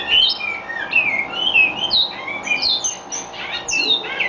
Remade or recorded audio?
recorded